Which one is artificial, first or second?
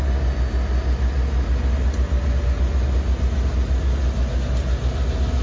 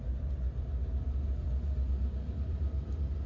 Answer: second